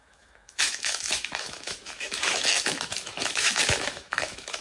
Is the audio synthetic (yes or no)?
yes